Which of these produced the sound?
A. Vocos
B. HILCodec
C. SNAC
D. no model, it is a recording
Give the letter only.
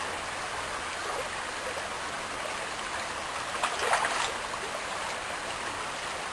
D